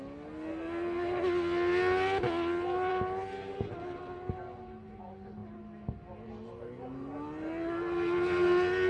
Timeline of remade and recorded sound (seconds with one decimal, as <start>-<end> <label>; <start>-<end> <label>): 0.0-8.9 recorded